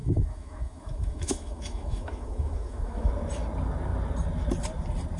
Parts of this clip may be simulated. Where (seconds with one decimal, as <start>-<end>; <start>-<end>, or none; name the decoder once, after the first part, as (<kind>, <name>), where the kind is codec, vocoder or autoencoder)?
0.0-3.1 (autoencoder, DAC-VAE)